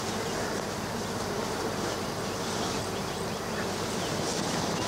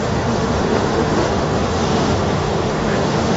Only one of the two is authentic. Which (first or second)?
first